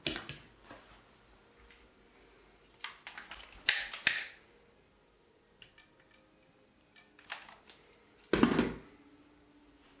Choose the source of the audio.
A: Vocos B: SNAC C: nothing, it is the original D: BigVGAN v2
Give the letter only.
C